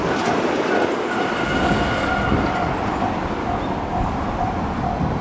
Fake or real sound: real